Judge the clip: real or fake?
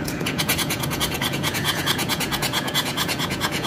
fake